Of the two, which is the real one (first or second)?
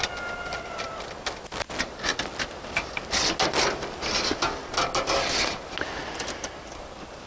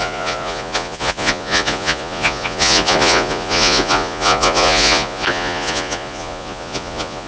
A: first